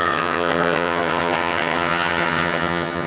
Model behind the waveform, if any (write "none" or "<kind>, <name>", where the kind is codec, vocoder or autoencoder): vocoder, HiFi-GAN